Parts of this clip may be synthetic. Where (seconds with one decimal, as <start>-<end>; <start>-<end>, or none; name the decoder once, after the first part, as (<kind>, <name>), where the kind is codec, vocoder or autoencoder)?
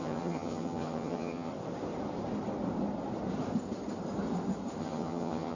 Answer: 0.0-1.5 (vocoder, HiFi-GAN); 4.8-5.5